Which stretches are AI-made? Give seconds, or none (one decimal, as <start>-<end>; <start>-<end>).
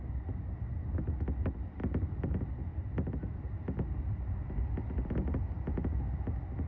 none